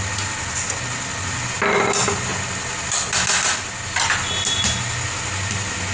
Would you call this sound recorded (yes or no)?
yes